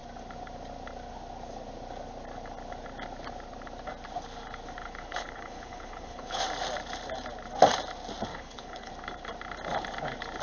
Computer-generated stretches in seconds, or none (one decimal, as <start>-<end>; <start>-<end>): 4.8-6.4; 8.3-8.9